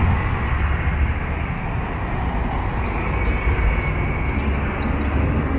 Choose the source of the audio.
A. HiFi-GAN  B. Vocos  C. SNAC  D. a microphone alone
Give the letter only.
D